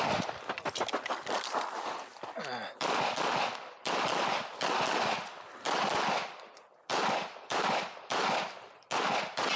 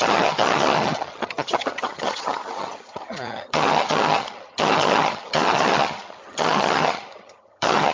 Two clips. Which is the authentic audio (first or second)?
first